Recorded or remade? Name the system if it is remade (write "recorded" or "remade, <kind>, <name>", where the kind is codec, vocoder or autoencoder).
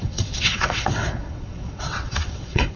remade, vocoder, WaveNeXt